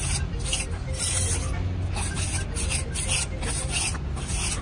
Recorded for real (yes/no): yes